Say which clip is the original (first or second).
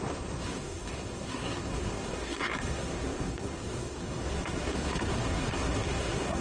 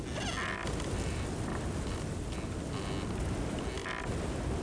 second